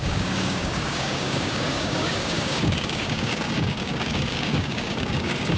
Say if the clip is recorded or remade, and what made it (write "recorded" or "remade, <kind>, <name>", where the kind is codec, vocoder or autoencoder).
remade, codec, DAC